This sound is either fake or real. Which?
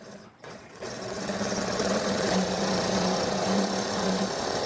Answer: fake